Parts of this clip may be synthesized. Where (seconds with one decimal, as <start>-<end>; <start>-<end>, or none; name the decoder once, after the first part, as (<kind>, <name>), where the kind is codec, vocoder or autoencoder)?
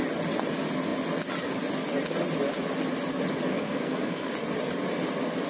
3.5-4.3 (codec, SNAC)